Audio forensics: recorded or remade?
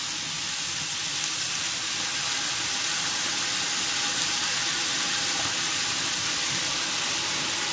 recorded